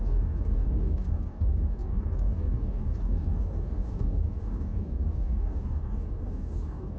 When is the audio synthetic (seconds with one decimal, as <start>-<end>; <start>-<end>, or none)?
0.0-7.0